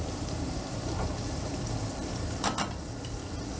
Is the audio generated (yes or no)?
yes